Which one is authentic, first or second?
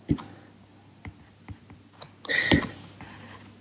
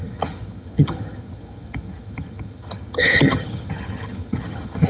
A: first